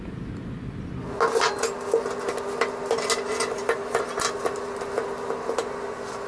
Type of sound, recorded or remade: recorded